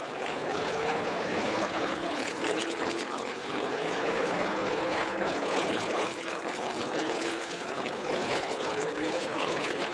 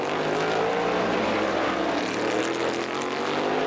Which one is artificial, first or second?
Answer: first